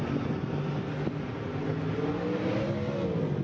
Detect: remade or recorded recorded